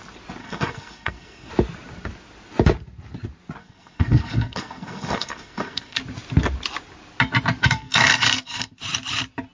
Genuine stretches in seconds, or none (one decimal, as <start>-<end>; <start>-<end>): 0.0-0.4; 1.5-3.6; 6.0-7.6; 8.7-9.5